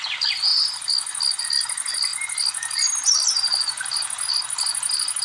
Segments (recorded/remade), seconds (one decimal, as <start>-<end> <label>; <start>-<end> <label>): 0.0-5.2 recorded